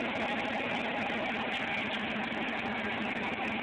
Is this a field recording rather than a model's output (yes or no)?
yes